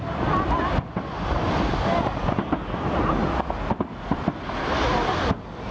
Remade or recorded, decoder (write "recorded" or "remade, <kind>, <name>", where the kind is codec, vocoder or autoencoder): recorded